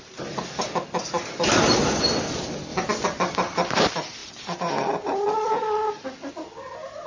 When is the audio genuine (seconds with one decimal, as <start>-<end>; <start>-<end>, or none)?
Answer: 0.0-7.1